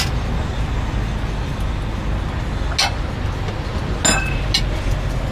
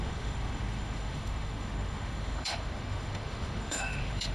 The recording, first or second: first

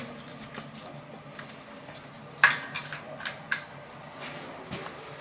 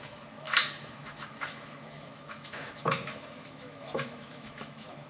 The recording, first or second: first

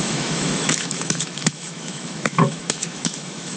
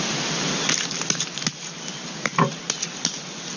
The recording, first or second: second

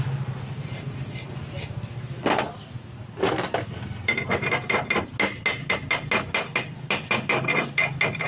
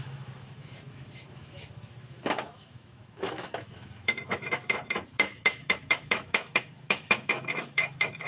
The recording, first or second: first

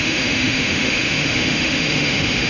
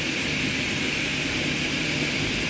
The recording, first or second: second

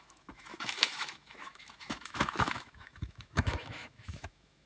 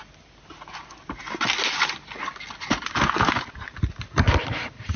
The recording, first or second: second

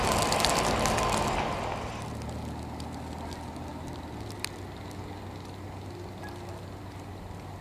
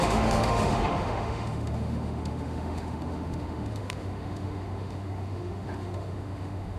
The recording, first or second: first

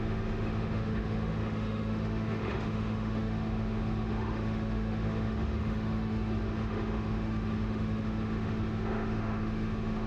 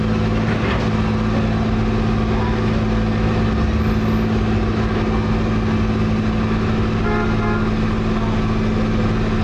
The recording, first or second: second